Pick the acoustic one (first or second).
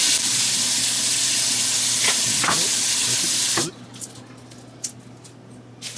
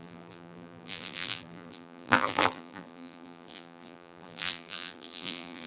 first